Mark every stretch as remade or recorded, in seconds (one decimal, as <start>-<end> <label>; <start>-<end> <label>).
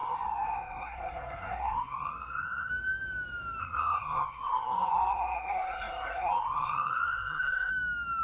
0.0-2.7 remade; 2.7-3.6 recorded; 3.6-7.7 remade; 7.7-8.2 recorded